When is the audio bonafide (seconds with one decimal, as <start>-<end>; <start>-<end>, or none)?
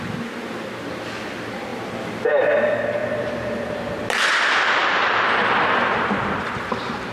0.0-3.0; 3.9-7.1